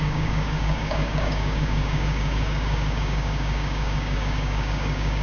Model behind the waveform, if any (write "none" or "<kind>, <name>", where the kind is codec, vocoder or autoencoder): codec, DAC